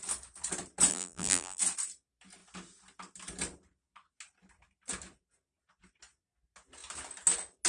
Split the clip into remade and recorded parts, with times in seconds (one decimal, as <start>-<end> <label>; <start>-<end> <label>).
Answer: 0.0-0.9 recorded; 0.9-1.6 remade; 1.6-7.7 recorded